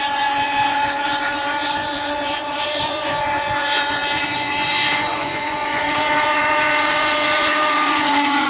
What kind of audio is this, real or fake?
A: fake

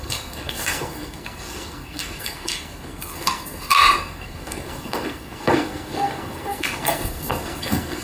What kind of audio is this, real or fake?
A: fake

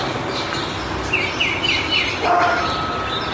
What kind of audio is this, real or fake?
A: real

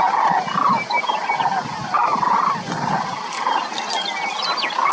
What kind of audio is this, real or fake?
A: real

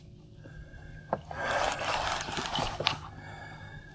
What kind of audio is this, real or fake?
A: real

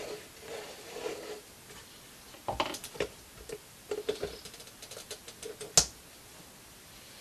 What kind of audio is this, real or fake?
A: real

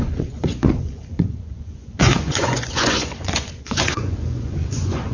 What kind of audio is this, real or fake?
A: fake